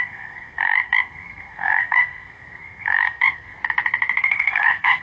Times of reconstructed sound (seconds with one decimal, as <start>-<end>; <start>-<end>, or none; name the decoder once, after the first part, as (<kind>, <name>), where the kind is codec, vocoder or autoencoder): 0.0-3.6 (codec, SNAC); 4.2-5.0